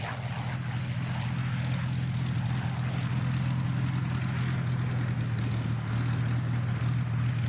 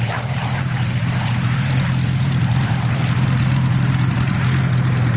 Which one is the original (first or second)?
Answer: first